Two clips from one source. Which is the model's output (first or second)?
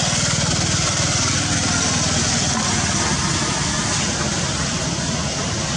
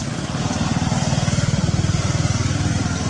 second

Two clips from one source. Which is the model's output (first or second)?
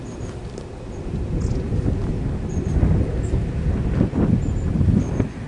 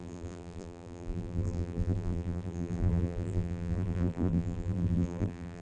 second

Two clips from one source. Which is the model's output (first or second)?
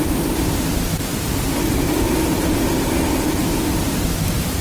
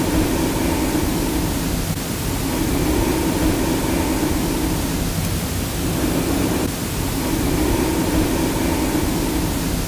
first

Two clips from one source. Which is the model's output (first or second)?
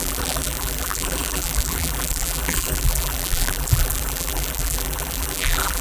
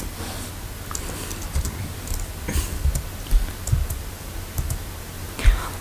first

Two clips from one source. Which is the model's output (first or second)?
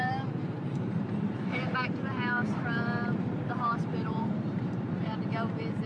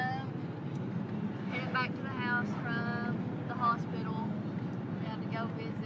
first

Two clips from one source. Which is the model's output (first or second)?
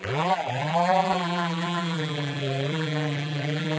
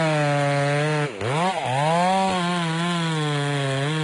first